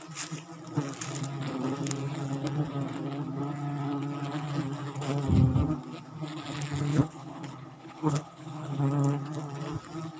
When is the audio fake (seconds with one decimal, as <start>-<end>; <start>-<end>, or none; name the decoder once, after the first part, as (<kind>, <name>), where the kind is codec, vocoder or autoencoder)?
6.9-8.8 (codec, HILCodec)